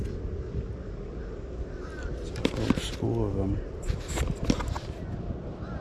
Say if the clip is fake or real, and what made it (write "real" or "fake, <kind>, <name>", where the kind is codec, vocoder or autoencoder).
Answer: real